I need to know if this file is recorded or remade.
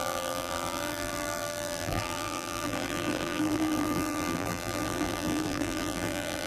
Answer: remade